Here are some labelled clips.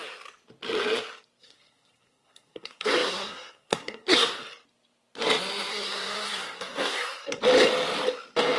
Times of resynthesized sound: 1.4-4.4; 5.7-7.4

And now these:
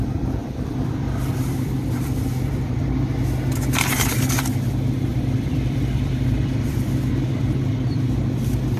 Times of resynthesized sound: 0.4-3.2; 5.1-8.1

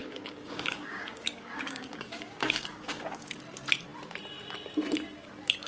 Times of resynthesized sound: 0.0-3.4

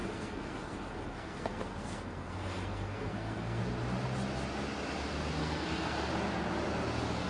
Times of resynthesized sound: 0.0-3.6; 5.4-6.1

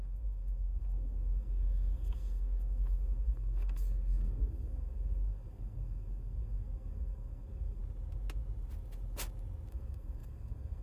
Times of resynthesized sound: 0.0-7.8; 9.7-10.8

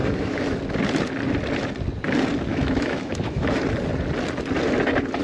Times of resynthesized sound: 0.0-0.6; 2.5-3.6